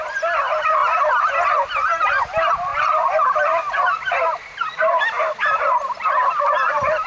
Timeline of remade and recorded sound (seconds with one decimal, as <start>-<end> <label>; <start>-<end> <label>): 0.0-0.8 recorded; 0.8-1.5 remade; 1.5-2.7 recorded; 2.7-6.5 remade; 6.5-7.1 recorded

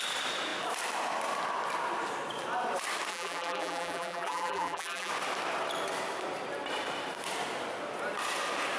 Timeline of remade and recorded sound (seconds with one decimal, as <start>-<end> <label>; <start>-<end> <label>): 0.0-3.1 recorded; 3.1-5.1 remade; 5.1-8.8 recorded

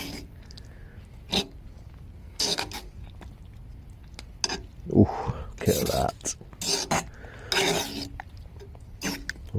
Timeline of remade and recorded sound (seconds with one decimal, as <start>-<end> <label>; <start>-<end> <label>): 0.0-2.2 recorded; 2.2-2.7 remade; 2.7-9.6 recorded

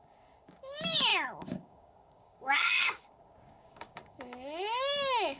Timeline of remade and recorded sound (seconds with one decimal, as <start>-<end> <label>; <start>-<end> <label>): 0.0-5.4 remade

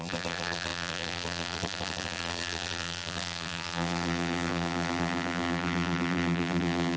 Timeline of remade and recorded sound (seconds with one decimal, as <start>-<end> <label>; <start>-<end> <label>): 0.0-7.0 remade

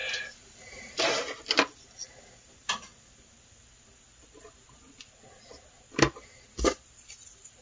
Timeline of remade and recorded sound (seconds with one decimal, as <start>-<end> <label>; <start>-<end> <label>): 0.0-7.6 recorded

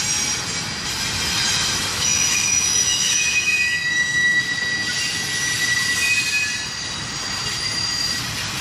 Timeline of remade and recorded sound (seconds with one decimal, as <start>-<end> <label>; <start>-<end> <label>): 0.0-1.9 recorded; 1.9-4.4 remade; 4.4-8.6 recorded

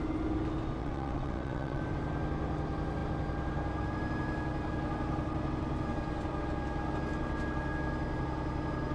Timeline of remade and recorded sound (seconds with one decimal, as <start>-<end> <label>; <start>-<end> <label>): 0.0-0.8 recorded; 0.8-1.8 remade; 1.8-8.9 recorded